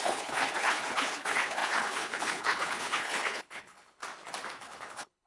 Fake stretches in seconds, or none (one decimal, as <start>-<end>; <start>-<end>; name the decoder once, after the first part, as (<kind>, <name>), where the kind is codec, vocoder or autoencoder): 0.0-4.0 (codec, HILCodec); 4.6-5.3